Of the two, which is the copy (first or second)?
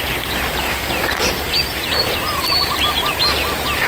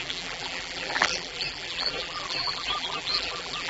second